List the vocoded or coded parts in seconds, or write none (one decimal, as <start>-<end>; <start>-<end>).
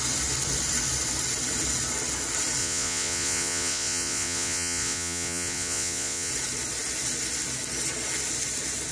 2.6-6.3